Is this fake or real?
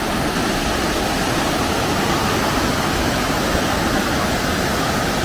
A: real